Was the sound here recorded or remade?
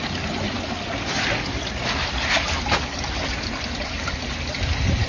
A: remade